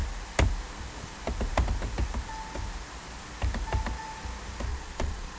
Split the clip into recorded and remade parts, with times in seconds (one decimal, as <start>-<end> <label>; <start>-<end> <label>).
0.0-4.7 recorded; 4.7-5.4 remade